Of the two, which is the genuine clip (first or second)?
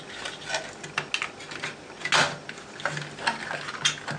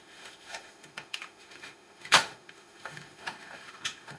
first